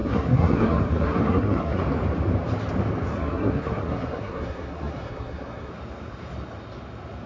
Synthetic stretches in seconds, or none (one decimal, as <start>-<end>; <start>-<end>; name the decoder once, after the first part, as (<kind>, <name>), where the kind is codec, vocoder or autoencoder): 0.0-1.8 (codec, SNAC); 3.1-5.7

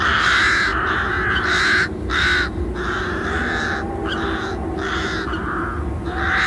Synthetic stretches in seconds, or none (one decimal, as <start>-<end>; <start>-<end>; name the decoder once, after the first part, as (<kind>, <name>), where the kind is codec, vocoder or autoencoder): none

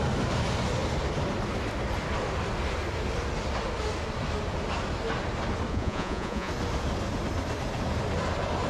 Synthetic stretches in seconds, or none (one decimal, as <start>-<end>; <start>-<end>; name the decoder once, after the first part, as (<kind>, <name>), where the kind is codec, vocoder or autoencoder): 5.7-6.5 (vocoder, Vocos)

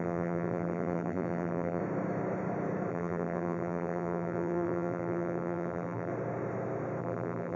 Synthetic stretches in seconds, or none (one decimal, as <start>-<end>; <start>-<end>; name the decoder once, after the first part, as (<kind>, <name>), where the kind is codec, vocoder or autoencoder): 0.0-1.8 (vocoder, BigVGAN v2); 2.9-6.1; 7.0-7.6

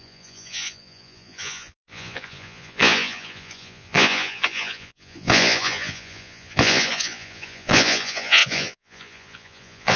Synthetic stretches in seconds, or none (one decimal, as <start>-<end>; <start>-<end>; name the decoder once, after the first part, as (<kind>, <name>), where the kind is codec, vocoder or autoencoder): 0.0-10.0 (vocoder, Vocos)

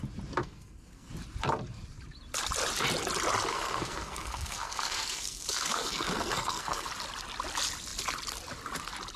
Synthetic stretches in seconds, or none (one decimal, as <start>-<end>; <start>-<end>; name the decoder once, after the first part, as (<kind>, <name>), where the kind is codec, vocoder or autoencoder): 0.4-1.1 (codec, SNAC); 3.5-6.9

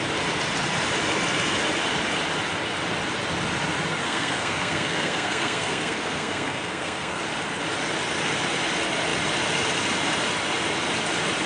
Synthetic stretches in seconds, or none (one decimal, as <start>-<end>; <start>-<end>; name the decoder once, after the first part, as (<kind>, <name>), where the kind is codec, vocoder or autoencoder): 3.9-7.2 (codec, SNAC)